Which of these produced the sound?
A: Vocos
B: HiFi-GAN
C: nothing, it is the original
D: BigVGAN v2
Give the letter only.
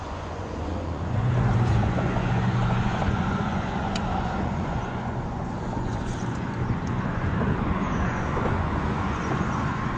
A